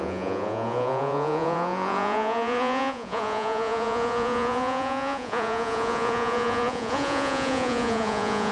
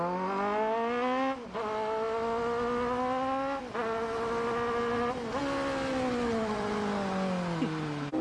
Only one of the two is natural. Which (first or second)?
second